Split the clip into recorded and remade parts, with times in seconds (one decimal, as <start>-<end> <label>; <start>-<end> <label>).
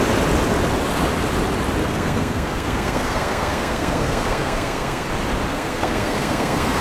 0.0-1.8 recorded; 1.8-5.1 remade; 5.1-5.5 recorded; 5.5-6.8 remade